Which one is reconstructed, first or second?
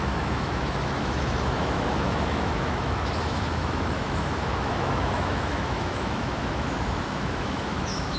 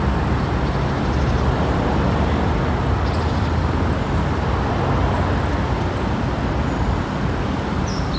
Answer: first